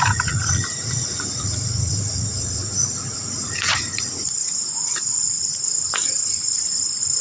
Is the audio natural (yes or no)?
no